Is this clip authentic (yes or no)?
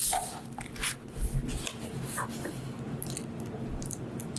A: yes